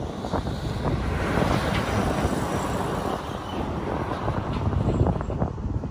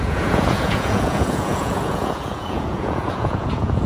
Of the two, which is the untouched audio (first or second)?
first